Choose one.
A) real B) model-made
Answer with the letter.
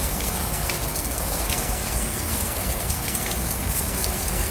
B